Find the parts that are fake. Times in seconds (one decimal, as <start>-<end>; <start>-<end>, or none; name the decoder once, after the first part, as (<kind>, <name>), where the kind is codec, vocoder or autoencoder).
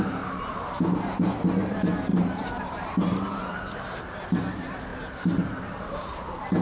0.0-6.6 (vocoder, BigVGAN v2)